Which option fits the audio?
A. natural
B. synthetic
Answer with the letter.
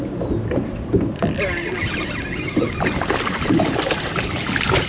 A